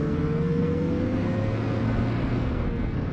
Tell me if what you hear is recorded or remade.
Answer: remade